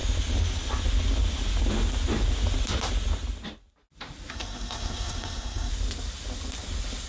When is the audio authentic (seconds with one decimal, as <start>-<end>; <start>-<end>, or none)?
0.0-4.3; 5.7-7.1